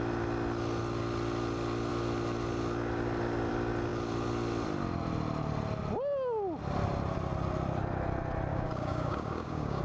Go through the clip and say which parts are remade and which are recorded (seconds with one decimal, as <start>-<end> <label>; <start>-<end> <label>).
0.0-8.5 recorded; 8.5-9.8 remade